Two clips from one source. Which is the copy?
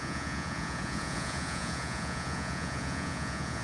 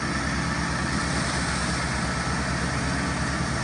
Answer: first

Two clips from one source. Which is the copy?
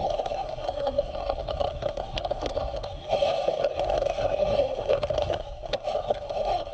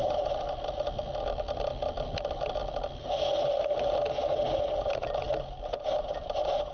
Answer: first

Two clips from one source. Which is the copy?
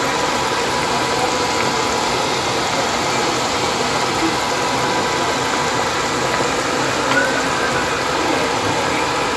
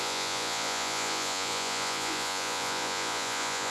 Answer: second